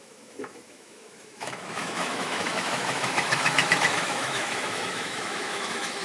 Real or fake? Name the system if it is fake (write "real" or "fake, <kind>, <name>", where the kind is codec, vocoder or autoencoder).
fake, autoencoder, DAC-VAE